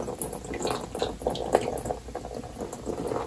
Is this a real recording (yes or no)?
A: yes